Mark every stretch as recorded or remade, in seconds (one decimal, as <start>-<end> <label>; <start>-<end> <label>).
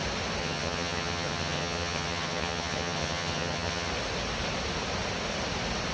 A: 0.0-0.4 recorded; 0.4-3.9 remade; 3.9-5.9 recorded